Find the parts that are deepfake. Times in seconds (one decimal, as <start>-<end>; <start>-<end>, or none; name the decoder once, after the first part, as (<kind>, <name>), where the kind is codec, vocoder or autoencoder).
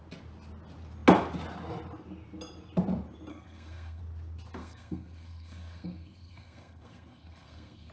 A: 3.3-4.0 (codec, SNAC); 4.6-7.9